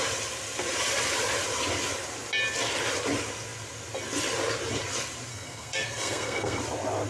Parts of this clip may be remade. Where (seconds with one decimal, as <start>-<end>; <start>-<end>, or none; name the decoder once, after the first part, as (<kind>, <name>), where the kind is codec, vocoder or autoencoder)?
5.3-6.6 (codec, SNAC)